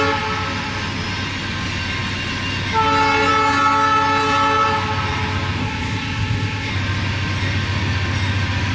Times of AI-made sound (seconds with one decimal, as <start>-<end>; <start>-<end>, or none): 5.6-6.7